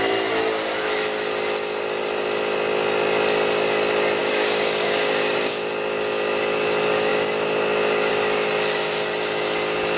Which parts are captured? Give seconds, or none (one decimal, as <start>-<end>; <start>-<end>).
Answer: 0.0-4.2; 5.5-10.0